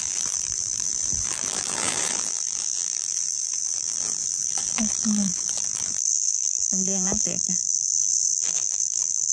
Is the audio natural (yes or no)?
no